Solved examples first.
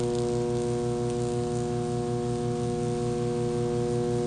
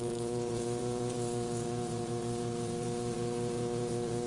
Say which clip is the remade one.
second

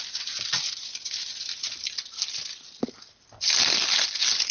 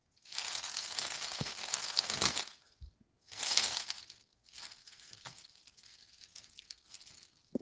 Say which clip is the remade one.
second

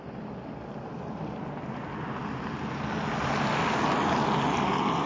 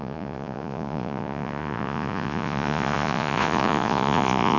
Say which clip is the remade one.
second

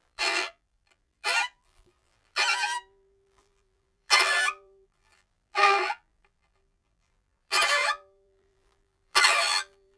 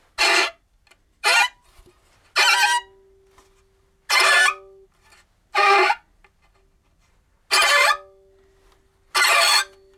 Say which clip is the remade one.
first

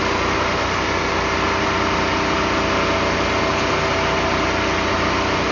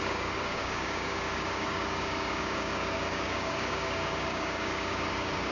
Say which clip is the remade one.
second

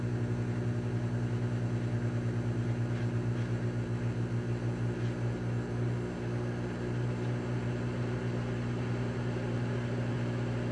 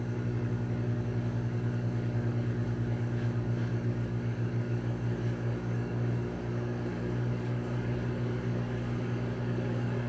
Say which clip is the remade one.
second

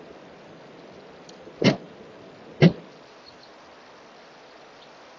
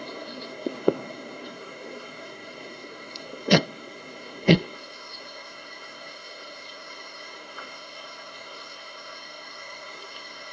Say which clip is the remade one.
second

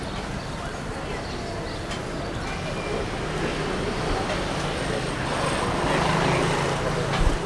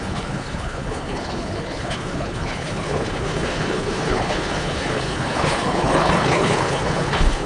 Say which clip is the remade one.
second